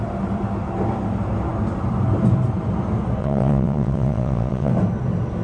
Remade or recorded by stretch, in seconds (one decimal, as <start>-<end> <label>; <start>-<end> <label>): 0.0-3.2 recorded; 3.2-4.7 remade; 4.7-5.4 recorded